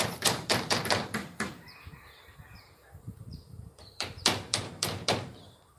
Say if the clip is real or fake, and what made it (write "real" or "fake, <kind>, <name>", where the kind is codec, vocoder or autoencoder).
fake, vocoder, BigVGAN v2